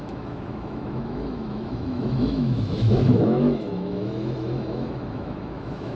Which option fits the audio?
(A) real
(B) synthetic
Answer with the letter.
B